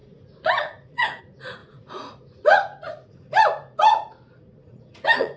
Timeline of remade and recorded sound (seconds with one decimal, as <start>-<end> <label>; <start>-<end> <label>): 0.0-5.4 remade